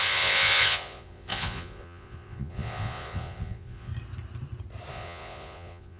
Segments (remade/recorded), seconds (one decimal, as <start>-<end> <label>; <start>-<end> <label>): 0.0-3.9 remade; 3.9-4.9 recorded; 4.9-6.0 remade